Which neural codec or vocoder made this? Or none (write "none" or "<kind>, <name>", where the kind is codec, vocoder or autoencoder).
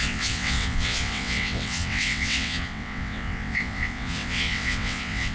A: vocoder, WaveNeXt